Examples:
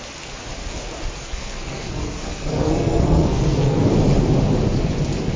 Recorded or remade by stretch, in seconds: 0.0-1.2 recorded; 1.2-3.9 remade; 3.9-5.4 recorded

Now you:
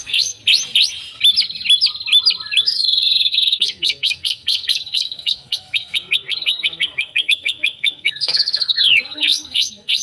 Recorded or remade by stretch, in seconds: 0.0-0.4 remade; 0.4-2.6 recorded; 2.6-10.0 remade

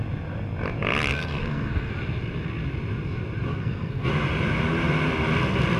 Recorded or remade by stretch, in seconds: 0.0-1.1 recorded; 1.1-1.9 remade; 1.9-3.5 recorded; 3.5-4.1 remade; 4.1-5.8 recorded

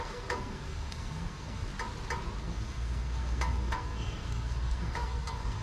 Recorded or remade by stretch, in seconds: 0.0-1.7 remade; 1.7-2.4 recorded; 2.4-5.6 remade

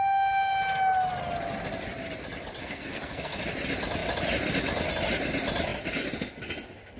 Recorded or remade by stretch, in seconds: 0.0-2.6 recorded; 2.6-3.4 remade; 3.4-7.0 recorded

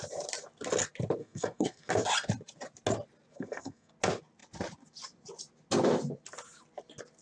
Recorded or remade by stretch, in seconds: 0.0-1.2 recorded; 1.2-1.9 remade; 1.9-3.3 recorded; 3.3-3.9 remade; 3.9-7.2 recorded